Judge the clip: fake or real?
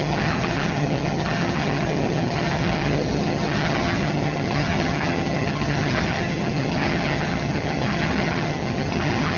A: fake